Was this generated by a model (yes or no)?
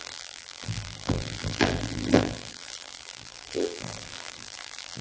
yes